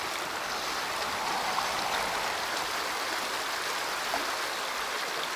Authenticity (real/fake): real